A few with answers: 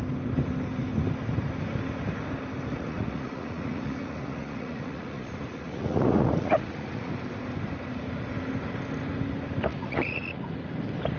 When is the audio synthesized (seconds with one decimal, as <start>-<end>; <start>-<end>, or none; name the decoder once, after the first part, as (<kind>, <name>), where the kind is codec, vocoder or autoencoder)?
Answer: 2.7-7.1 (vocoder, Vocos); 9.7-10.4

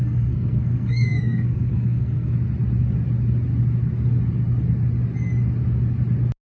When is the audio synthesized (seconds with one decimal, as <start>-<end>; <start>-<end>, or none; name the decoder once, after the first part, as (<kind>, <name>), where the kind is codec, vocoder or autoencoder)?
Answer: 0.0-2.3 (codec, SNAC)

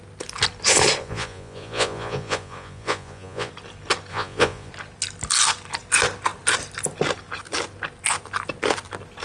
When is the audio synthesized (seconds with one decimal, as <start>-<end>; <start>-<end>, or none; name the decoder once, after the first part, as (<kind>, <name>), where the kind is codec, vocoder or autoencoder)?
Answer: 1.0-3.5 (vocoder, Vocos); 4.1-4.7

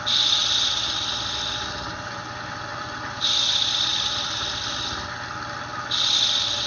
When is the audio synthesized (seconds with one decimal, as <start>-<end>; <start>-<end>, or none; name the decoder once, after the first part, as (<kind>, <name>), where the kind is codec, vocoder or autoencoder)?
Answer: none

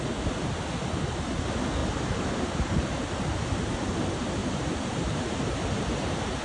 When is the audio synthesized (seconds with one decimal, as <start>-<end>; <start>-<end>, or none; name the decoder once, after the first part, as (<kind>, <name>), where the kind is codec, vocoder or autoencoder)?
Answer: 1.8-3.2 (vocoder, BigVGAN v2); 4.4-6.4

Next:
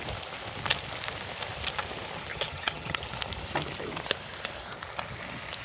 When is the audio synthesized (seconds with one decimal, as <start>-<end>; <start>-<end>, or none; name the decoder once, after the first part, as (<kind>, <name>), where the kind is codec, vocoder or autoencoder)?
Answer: 2.3-3.0 (vocoder, HiFi-GAN)

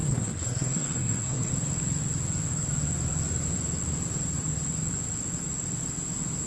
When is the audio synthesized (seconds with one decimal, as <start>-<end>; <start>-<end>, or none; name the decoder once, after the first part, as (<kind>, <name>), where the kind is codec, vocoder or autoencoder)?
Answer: 0.0-1.5 (codec, SNAC)

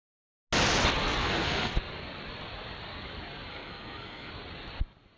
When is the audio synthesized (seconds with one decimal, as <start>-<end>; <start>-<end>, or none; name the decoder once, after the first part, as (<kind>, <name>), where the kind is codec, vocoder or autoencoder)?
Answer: 1.2-1.7 (codec, SNAC); 3.5-4.3